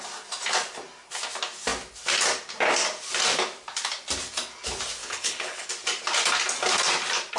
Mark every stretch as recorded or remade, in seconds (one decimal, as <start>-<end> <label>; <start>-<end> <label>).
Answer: 0.0-5.0 recorded; 5.0-5.7 remade; 5.7-7.4 recorded